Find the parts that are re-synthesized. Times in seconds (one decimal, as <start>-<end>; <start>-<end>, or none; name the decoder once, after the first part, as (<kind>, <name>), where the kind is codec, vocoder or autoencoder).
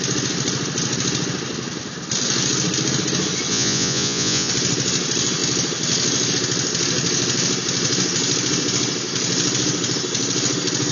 3.5-4.5 (vocoder, Vocos)